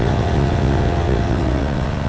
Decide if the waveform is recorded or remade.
remade